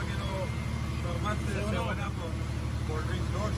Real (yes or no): no